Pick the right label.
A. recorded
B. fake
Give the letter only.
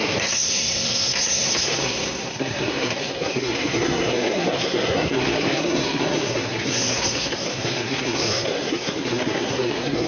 B